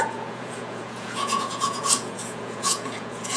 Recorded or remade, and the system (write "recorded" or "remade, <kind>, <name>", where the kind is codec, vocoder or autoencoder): remade, vocoder, Vocos